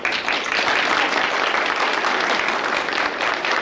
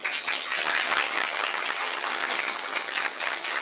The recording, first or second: first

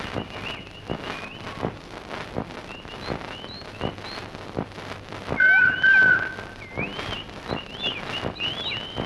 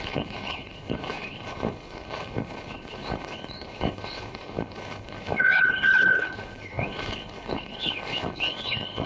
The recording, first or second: first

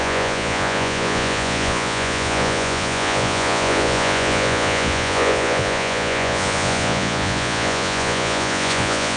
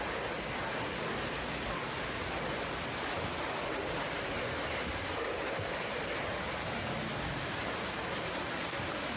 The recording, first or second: second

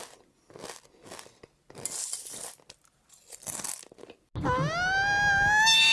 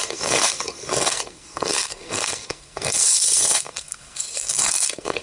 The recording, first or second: first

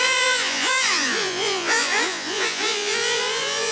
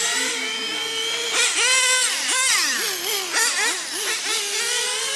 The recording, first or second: second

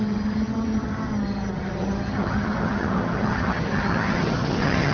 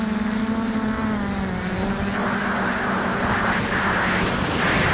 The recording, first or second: second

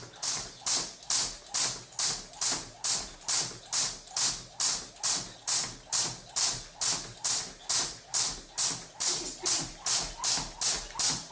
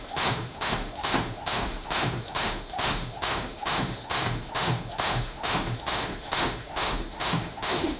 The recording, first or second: first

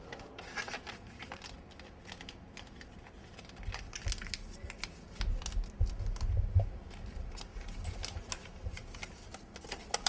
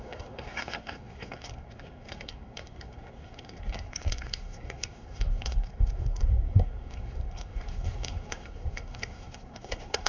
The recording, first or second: first